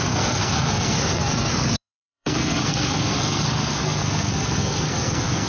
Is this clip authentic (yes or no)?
no